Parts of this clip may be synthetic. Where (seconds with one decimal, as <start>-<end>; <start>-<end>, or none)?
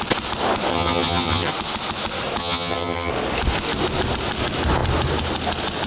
0.7-1.5; 2.4-3.1